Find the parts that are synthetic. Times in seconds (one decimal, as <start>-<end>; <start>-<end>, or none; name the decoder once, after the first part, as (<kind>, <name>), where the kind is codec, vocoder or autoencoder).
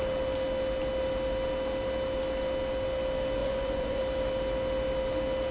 3.4-4.0 (vocoder, Vocos)